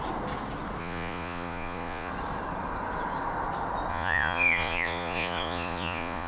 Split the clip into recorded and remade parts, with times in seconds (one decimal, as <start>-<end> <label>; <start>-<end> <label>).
0.0-0.8 recorded; 0.8-2.1 remade; 2.1-3.9 recorded; 3.9-6.3 remade